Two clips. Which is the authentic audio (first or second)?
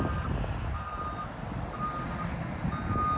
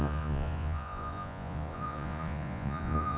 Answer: first